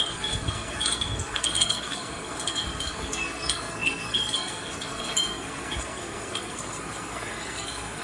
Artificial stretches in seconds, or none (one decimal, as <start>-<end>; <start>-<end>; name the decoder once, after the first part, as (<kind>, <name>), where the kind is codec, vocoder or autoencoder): 0.0-8.0 (codec, SNAC)